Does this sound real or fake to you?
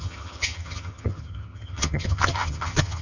fake